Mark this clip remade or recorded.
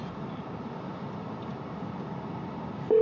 recorded